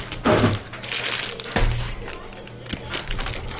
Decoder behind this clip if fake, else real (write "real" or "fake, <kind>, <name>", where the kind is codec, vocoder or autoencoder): real